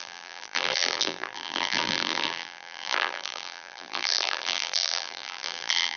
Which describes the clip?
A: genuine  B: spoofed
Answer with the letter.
B